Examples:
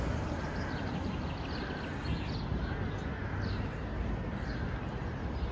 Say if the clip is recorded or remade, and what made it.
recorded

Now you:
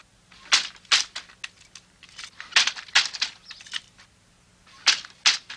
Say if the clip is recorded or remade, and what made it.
recorded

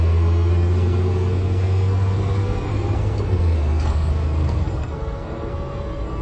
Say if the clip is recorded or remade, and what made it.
remade, codec, SNAC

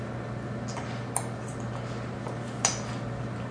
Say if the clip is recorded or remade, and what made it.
recorded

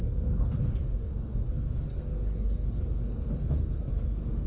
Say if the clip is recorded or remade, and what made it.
remade, codec, SNAC